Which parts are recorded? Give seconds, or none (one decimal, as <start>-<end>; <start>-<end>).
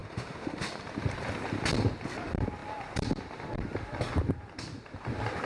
0.7-5.5